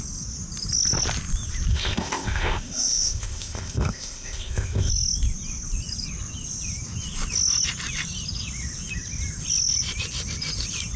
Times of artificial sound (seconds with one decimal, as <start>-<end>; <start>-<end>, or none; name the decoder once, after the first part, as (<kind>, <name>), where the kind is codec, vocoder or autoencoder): 1.7-4.9 (codec, ZipCodec)